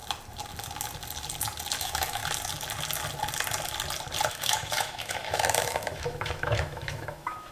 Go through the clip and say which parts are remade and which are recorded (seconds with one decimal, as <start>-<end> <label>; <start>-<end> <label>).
0.0-1.8 recorded; 1.8-2.2 remade; 2.2-4.3 recorded; 4.3-7.5 remade

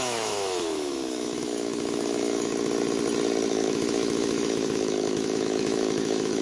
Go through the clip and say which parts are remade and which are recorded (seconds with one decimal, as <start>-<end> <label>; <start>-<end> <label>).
0.0-2.5 remade; 2.5-3.5 recorded; 3.5-6.4 remade

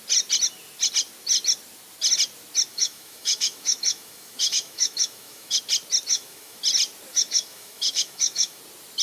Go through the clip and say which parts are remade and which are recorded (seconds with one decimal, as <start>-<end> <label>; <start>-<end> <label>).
0.0-2.7 recorded; 2.7-5.6 remade; 5.6-6.1 recorded; 6.1-6.6 remade; 6.6-7.1 recorded; 7.1-8.6 remade; 8.6-9.0 recorded

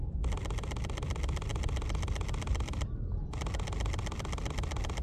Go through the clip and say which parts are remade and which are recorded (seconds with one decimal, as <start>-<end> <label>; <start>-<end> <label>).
0.0-5.0 recorded

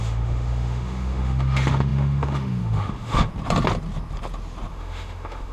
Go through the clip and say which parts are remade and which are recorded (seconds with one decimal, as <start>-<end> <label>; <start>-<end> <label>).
0.0-3.3 remade; 3.3-4.7 recorded; 4.7-5.5 remade

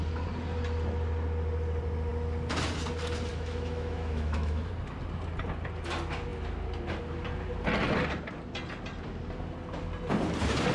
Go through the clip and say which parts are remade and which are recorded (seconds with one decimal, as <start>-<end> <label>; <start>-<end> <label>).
0.0-3.3 recorded; 3.3-4.7 remade; 4.7-10.7 recorded

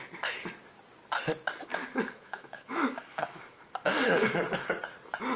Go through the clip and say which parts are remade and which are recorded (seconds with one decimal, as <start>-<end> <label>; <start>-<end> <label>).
0.0-1.7 recorded; 1.7-3.4 remade; 3.4-4.2 recorded; 4.2-4.8 remade; 4.8-5.4 recorded

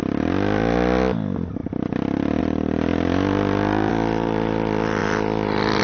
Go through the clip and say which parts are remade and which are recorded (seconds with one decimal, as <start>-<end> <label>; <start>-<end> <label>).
0.0-5.8 recorded